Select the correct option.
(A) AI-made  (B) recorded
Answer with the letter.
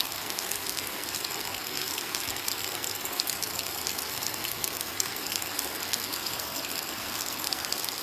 A